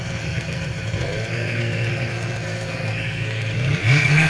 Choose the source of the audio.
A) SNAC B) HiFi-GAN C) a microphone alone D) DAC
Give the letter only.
A